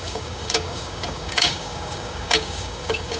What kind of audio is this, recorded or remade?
remade